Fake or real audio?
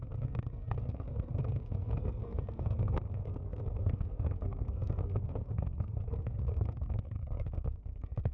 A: fake